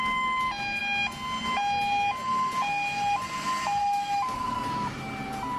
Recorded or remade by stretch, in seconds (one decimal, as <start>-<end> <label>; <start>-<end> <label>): 0.0-3.8 recorded; 3.8-5.1 remade; 5.1-5.6 recorded